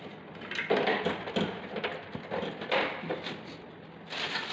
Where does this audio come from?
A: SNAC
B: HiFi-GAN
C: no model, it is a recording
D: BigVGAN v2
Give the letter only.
C